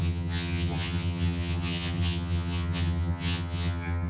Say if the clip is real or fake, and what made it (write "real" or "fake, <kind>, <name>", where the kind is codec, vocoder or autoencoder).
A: fake, vocoder, HiFi-GAN